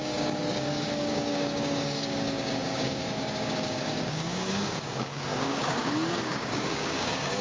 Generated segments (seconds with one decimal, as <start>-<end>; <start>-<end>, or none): 0.0-7.4